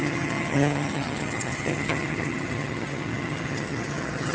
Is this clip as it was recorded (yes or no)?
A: no